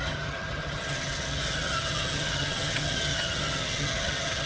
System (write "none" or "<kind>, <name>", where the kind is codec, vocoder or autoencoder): vocoder, HiFi-GAN